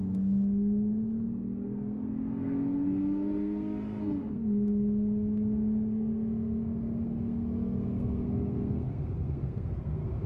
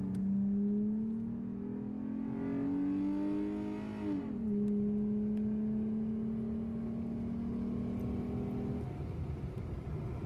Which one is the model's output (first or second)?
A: first